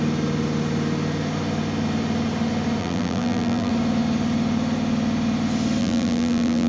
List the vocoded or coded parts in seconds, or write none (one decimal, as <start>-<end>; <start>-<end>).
2.8-3.7; 5.8-6.7